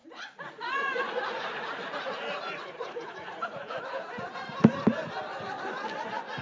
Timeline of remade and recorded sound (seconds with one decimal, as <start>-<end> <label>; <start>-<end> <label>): 0.0-3.8 remade; 3.8-6.4 recorded